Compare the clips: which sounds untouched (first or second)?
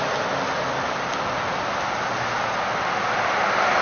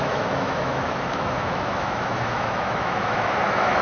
first